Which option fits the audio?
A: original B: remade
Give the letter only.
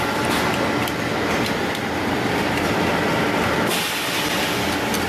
A